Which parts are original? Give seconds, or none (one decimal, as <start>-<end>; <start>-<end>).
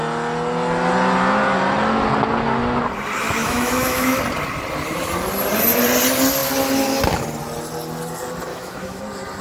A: 0.0-3.4; 4.2-8.5; 9.0-9.4